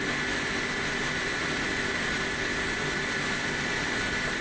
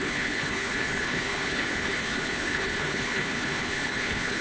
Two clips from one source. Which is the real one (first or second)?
first